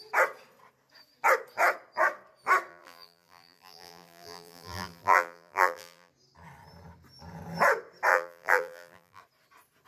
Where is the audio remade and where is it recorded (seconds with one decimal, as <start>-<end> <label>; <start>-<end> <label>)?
0.0-2.7 recorded; 2.7-6.1 remade; 6.1-8.1 recorded; 8.1-9.2 remade; 9.2-9.9 recorded